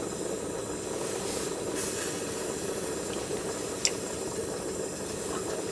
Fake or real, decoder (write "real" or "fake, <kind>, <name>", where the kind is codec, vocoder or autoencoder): real